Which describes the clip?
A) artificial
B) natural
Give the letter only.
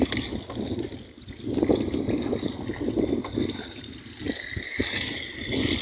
B